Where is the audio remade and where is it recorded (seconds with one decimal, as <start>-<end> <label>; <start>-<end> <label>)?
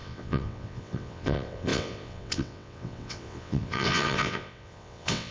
0.0-5.3 remade